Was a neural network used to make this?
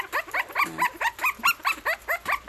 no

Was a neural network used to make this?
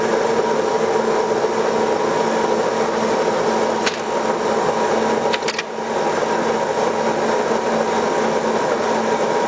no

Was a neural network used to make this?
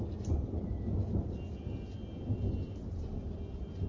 no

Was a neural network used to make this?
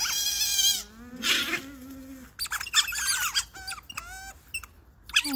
no